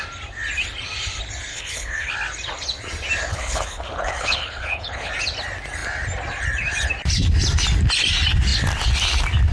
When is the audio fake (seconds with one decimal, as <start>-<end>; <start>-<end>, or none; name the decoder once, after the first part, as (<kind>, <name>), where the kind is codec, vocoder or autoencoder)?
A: 1.5-2.1 (codec, HILCodec); 3.3-5.1